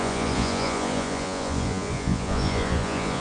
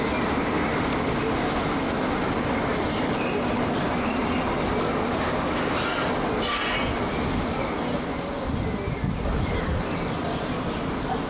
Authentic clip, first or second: second